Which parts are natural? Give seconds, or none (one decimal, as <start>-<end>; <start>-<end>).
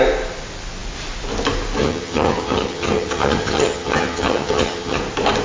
0.0-1.8; 5.0-5.4